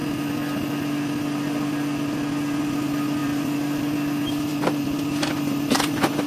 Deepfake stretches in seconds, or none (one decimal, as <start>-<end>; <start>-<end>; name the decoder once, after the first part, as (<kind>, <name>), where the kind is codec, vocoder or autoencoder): 3.2-3.8 (vocoder, BigVGAN v2); 4.5-6.3